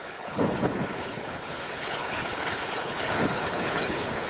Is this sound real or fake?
fake